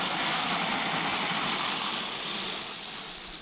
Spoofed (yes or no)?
yes